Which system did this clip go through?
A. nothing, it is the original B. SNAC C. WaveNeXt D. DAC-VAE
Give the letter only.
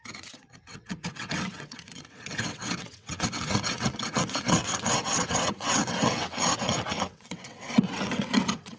C